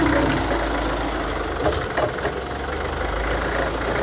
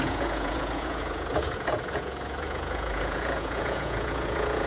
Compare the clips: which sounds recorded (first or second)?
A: first